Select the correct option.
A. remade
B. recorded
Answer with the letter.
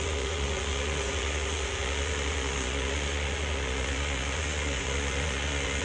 A